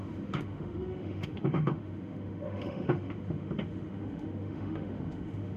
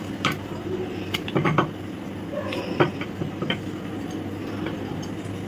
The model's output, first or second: first